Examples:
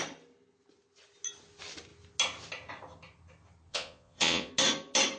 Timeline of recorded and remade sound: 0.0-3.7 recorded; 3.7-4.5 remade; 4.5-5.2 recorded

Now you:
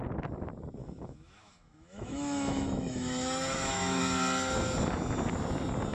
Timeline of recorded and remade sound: 0.0-0.8 recorded; 0.8-4.0 remade; 4.0-5.9 recorded

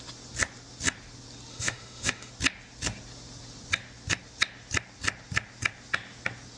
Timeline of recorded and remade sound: 0.0-1.5 recorded; 1.5-2.3 remade; 2.3-6.6 recorded

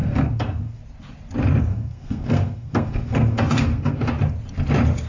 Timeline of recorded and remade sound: 0.0-0.8 remade; 0.8-1.7 recorded; 1.7-4.0 remade; 4.0-5.1 recorded